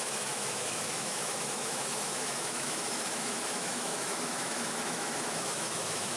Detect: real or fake fake